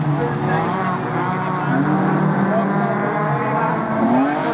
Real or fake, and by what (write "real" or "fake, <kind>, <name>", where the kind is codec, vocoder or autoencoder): real